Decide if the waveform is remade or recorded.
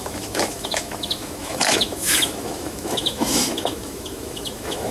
remade